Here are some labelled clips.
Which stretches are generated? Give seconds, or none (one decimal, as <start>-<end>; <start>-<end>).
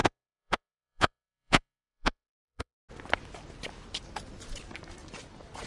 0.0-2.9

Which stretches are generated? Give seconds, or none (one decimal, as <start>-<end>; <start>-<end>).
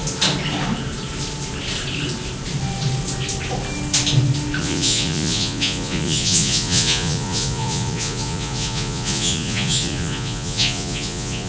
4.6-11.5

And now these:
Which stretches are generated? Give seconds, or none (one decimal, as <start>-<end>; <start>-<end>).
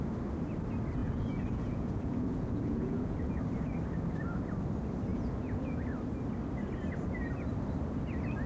1.0-3.4; 5.1-5.8